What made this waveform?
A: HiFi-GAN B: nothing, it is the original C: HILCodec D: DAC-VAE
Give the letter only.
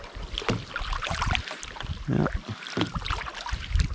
B